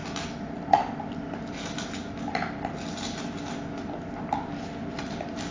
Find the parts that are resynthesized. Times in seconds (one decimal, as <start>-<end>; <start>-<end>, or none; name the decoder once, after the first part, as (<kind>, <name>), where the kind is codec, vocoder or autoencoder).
none